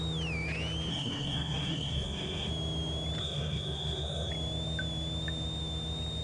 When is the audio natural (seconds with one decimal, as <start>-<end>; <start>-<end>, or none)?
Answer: 0.0-0.9; 2.5-3.2; 4.3-6.2